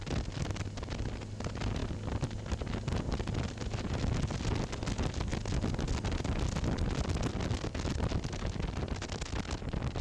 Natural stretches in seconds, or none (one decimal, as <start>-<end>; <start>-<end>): 0.0-10.0

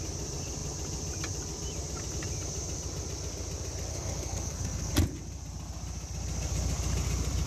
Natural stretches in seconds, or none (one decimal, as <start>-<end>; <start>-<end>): 0.0-3.9; 4.9-7.5

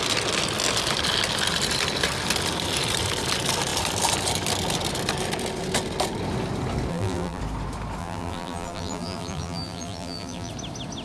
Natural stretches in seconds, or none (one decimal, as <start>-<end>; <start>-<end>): 0.0-6.9; 7.4-8.0; 10.5-11.0